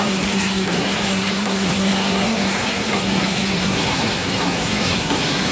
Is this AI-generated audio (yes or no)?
yes